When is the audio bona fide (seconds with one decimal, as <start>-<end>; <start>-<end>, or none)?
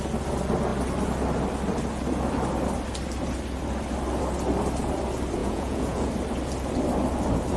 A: 0.0-5.4; 6.1-7.6